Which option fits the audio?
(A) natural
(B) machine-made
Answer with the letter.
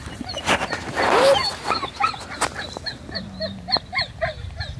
A